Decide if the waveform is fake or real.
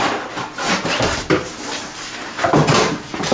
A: real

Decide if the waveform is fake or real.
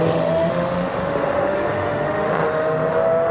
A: fake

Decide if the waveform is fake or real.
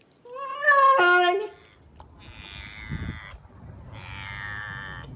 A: real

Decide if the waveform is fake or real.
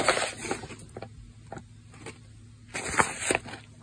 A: real